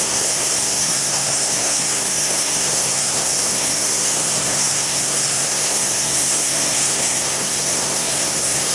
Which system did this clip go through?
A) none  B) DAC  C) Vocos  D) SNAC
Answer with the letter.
D